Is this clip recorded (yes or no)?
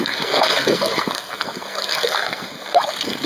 no